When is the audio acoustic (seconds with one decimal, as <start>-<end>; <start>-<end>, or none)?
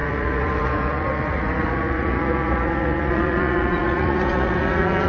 none